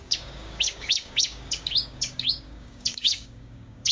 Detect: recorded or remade remade